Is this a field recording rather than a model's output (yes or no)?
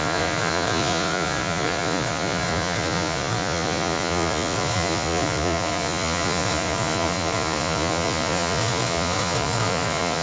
no